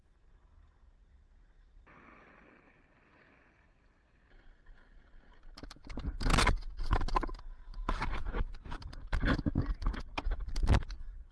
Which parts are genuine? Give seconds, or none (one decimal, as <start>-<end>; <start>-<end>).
0.0-11.3